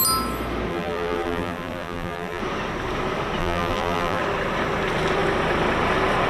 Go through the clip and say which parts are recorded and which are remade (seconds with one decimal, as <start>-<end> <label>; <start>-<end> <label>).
0.0-0.7 recorded; 0.7-2.4 remade; 2.4-3.4 recorded; 3.4-4.2 remade; 4.2-6.3 recorded